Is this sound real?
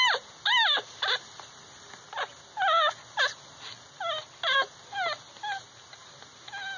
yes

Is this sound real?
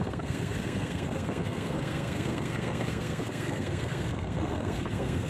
no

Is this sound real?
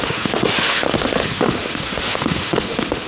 no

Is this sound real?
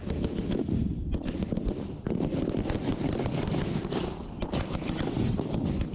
yes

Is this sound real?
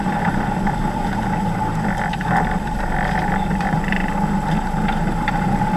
no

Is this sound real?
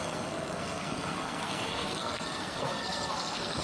no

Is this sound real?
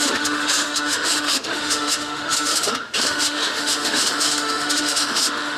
no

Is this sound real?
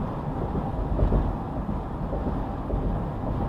yes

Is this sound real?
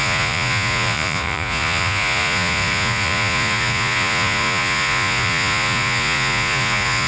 no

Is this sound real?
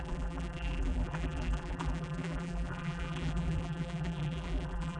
no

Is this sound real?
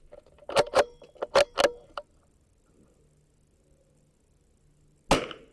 yes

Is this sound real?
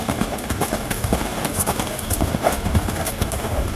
no